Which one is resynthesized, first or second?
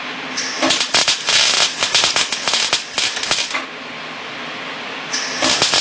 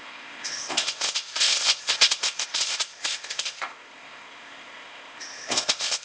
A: second